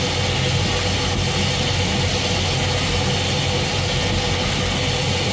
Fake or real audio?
real